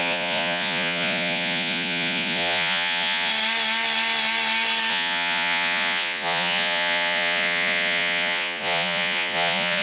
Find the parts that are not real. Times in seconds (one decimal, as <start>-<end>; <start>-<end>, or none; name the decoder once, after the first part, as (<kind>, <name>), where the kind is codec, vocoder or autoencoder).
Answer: 0.0-3.3 (vocoder, Vocos); 4.9-9.8